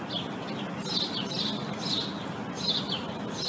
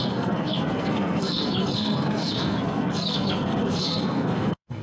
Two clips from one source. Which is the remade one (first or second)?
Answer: second